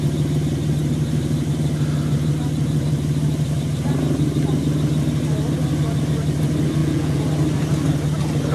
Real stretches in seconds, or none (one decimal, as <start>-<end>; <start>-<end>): 0.0-6.8; 7.3-8.5